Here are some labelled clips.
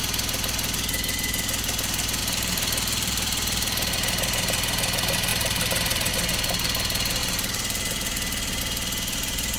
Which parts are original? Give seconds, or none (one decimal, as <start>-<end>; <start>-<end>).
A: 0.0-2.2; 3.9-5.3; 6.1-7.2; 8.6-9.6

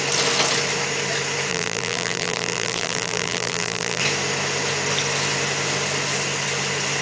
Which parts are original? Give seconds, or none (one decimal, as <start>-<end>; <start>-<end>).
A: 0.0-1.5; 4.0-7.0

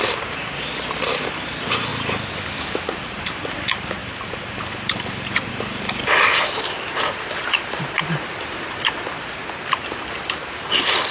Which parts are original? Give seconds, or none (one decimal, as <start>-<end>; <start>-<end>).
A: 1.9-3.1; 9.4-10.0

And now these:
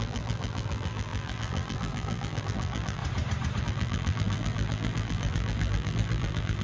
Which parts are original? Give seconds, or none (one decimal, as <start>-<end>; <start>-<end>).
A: 3.0-3.6